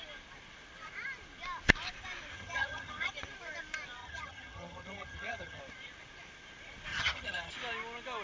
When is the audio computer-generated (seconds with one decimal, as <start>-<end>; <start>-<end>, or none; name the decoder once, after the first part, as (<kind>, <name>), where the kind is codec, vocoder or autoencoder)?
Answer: 2.3-3.1 (vocoder, HiFi-GAN); 4.0-5.6; 6.9-7.5